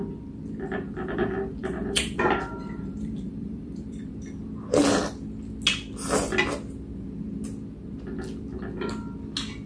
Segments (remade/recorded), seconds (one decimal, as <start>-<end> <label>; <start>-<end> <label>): 0.0-1.6 recorded; 1.6-4.1 remade; 4.1-9.7 recorded